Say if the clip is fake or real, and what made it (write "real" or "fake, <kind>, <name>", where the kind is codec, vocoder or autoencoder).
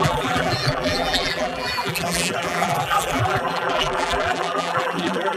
fake, vocoder, BigVGAN v2